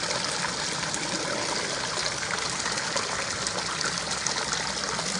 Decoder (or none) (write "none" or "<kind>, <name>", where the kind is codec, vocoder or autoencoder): none